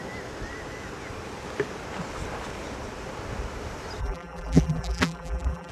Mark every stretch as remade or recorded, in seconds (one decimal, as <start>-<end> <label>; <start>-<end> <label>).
0.0-4.0 recorded; 4.0-5.7 remade